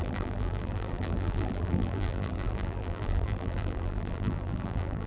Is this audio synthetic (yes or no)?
yes